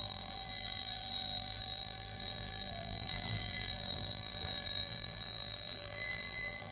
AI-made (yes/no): yes